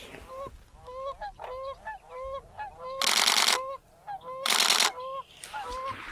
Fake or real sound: real